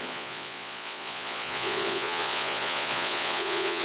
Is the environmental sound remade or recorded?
remade